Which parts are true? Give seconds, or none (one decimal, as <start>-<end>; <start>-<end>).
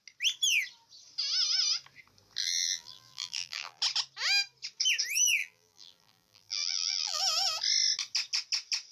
0.0-2.4; 3.8-5.4; 7.2-8.9